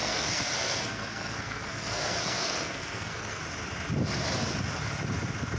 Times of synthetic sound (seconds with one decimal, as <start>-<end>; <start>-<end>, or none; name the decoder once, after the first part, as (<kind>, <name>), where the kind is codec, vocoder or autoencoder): 0.0-3.4 (codec, SNAC)